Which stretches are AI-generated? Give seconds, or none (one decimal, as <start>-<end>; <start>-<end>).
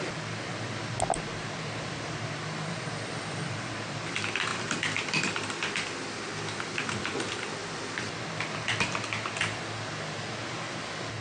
0.0-11.2